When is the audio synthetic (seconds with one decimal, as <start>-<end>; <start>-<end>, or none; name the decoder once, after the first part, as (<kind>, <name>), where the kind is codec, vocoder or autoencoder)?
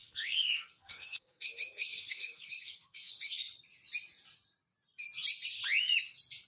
0.0-3.3 (codec, SNAC)